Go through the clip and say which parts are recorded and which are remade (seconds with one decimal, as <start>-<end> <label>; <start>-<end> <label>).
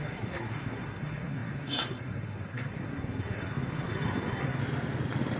0.0-4.6 remade; 4.6-5.4 recorded